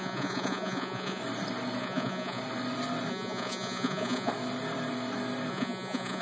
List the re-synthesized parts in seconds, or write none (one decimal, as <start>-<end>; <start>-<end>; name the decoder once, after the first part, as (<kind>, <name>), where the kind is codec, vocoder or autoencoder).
0.0-1.2 (vocoder, Vocos); 1.8-2.4; 3.1-4.3; 5.5-6.2